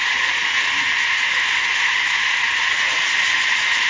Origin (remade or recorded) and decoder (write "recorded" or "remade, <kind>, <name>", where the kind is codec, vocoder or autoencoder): recorded